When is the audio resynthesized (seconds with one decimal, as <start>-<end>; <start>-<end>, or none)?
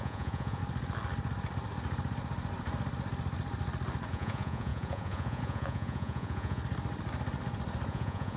0.0-0.6; 4.1-6.6; 7.9-8.4